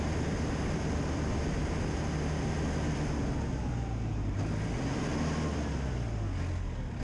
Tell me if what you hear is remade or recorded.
recorded